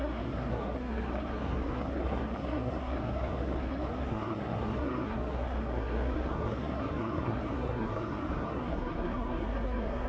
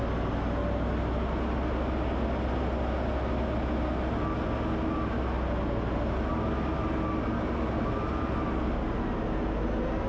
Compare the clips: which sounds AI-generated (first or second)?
first